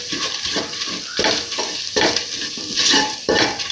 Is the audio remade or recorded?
remade